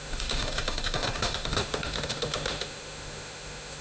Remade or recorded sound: remade